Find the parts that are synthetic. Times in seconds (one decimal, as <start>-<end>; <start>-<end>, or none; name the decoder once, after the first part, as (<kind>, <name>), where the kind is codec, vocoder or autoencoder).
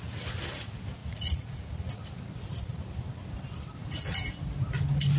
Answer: 1.0-1.7 (vocoder, Vocos); 3.8-4.3